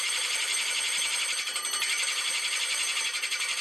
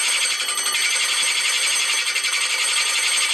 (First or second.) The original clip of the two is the second